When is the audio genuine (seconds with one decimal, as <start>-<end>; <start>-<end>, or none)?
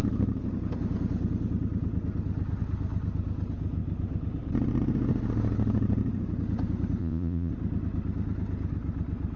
0.0-7.0; 7.5-9.4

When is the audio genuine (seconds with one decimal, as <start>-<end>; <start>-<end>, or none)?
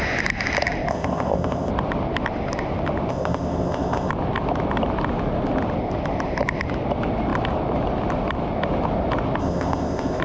0.0-0.9; 1.7-3.1; 4.1-9.4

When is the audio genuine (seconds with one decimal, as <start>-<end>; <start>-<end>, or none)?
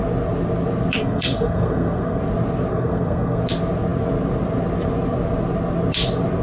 0.0-1.0; 2.2-2.7; 3.4-6.4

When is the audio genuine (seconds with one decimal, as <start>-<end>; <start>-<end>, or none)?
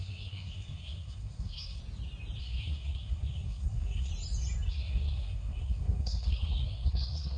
1.8-2.4; 4.1-4.7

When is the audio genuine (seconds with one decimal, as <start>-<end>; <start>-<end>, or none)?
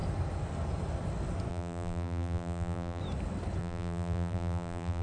0.0-1.5; 3.0-3.6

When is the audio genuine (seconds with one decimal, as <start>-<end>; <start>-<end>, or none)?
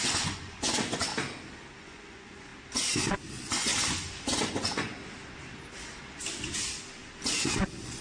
1.1-1.8; 2.5-3.3; 3.7-4.4; 4.9-7.3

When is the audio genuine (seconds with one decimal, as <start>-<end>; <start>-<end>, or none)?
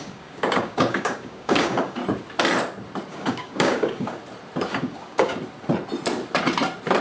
2.0-3.1; 4.2-4.7; 5.3-7.0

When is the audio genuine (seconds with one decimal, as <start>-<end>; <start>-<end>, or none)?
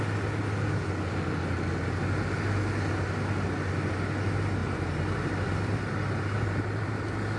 0.0-4.6; 6.9-7.4